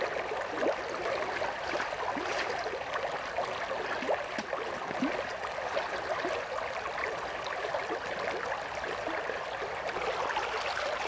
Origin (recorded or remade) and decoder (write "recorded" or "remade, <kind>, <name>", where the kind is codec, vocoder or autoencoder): recorded